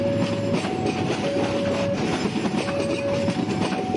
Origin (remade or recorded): recorded